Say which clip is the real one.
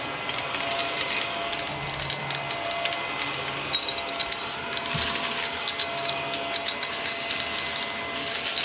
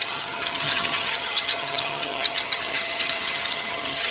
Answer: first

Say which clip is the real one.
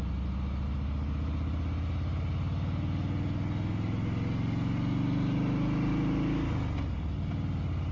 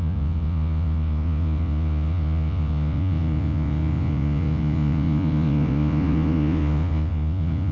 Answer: first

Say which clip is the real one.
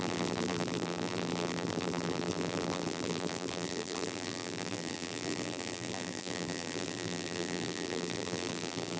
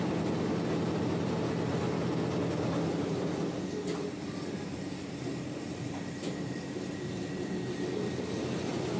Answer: second